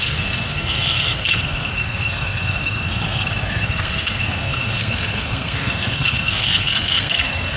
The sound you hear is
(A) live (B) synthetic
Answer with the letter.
B